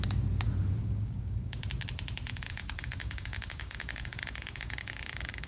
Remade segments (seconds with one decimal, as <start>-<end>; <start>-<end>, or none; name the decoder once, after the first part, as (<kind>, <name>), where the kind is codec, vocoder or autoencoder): 0.8-1.6 (codec, DAC); 2.3-5.5